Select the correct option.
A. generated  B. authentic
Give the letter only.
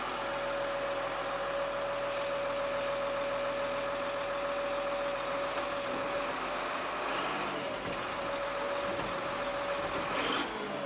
B